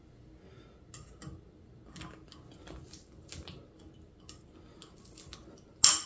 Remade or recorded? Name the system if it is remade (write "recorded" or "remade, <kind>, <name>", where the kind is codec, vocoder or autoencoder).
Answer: recorded